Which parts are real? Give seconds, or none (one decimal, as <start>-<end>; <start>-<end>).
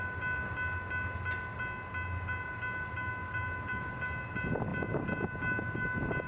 0.0-6.3